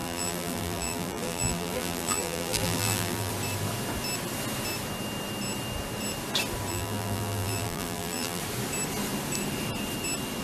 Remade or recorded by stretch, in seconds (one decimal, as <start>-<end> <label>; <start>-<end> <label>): 0.0-3.3 remade; 3.3-6.7 recorded; 6.7-8.4 remade; 8.4-10.4 recorded